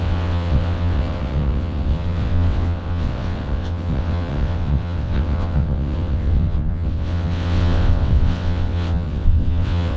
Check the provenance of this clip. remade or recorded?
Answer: remade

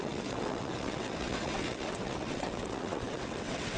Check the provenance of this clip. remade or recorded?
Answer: remade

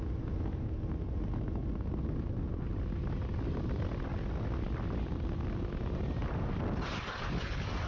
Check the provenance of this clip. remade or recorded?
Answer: recorded